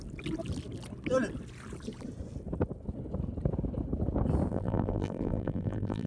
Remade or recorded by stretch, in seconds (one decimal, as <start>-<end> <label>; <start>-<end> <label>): 0.0-4.5 recorded; 4.5-6.1 remade